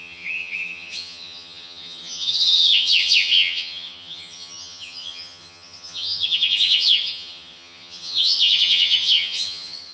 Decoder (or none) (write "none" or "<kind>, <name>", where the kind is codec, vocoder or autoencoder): vocoder, HiFi-GAN